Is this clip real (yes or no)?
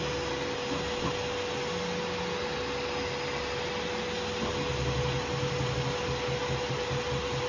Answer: yes